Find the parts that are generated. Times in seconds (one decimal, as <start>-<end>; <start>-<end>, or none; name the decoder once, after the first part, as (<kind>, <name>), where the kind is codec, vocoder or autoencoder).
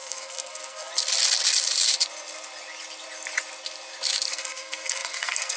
0.0-0.9 (codec, SNAC); 4.3-5.6